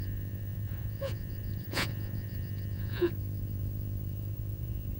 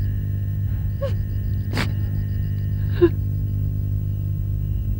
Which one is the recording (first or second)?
second